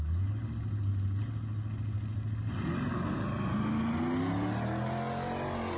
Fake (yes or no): no